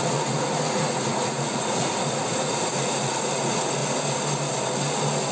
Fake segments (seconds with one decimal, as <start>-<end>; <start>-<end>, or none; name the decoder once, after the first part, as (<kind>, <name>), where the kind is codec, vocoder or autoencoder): 0.0-3.8 (vocoder, Vocos)